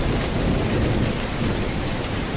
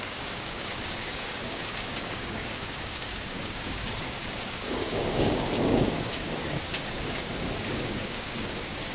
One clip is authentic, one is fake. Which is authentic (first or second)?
first